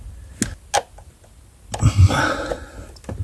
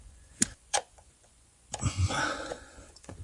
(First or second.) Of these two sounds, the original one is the first